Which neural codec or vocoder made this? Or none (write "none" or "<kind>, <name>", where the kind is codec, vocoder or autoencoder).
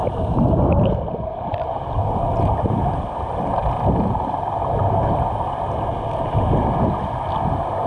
none